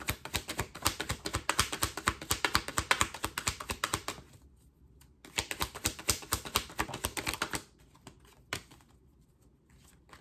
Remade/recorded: recorded